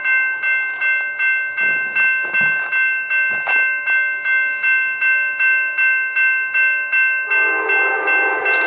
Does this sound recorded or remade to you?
recorded